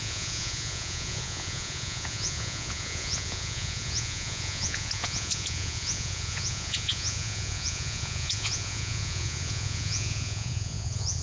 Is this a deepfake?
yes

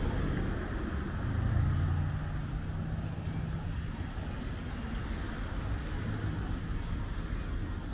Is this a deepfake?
no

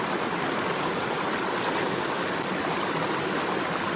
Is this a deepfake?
no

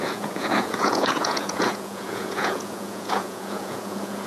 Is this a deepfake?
yes